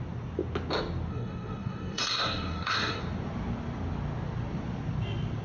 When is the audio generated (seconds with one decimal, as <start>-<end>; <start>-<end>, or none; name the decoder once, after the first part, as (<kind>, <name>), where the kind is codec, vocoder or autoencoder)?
1.1-3.0 (codec, SNAC)